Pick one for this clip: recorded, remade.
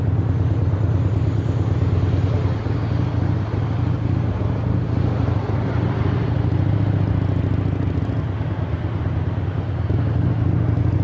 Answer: recorded